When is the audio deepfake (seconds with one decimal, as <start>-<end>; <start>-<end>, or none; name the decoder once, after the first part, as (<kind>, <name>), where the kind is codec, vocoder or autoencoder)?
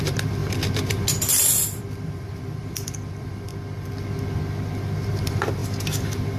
0.0-0.4 (vocoder, BigVGAN v2); 1.3-3.5; 5.1-5.6